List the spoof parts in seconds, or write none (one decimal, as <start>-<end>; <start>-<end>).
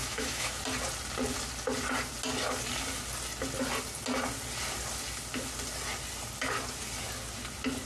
0.0-0.6